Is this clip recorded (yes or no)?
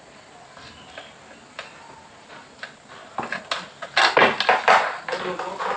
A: yes